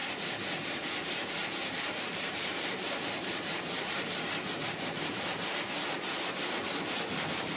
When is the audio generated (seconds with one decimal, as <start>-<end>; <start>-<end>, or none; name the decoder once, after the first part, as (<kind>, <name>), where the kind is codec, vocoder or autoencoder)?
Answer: 0.0-0.7 (vocoder, BigVGAN v2); 1.4-5.6